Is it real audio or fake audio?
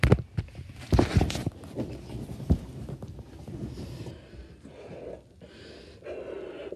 real